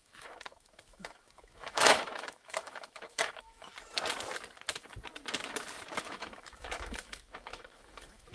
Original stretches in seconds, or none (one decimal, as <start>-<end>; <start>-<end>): 3.7-6.0